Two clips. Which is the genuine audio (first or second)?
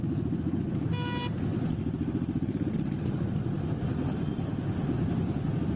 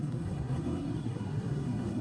first